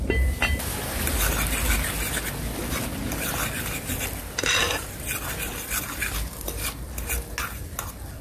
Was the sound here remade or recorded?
recorded